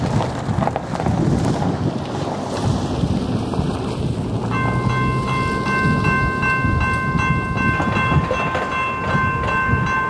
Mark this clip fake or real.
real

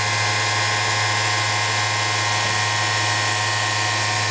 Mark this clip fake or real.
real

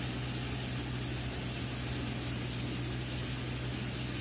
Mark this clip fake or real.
real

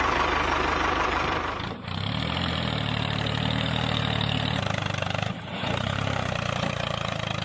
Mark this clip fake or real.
fake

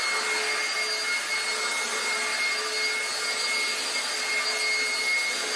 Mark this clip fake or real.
real